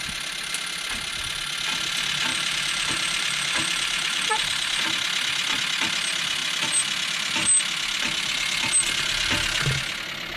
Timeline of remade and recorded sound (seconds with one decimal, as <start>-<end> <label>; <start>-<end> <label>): 0.0-2.3 recorded; 2.3-4.8 remade; 4.8-10.4 recorded